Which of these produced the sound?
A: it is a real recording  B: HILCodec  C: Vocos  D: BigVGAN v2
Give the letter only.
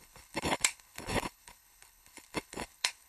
B